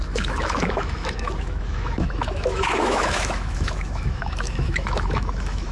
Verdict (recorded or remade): remade